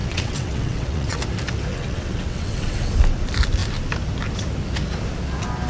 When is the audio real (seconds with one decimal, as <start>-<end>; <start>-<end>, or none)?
1.2-1.7; 2.9-5.7